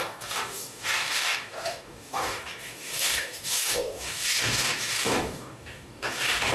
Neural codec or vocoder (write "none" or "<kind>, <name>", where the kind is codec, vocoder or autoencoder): codec, DAC